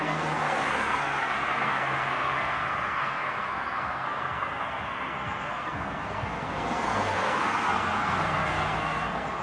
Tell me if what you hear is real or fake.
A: fake